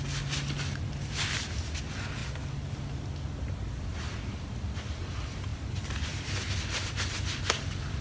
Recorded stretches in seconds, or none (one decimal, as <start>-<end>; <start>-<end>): 0.0-8.0